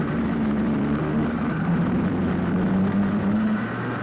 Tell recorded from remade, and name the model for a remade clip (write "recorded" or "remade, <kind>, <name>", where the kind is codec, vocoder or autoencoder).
remade, vocoder, BigVGAN v2